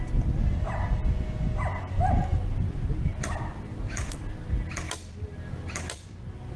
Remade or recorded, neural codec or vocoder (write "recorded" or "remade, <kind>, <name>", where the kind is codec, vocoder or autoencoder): recorded